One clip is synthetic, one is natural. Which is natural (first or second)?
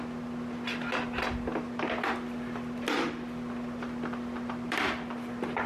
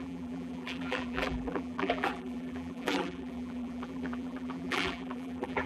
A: first